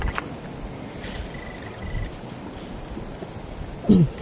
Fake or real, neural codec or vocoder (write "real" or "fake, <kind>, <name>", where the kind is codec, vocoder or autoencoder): real